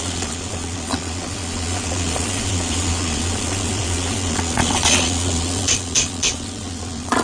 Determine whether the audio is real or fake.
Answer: fake